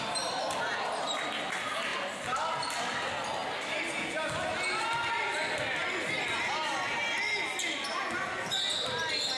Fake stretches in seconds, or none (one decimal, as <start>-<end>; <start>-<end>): none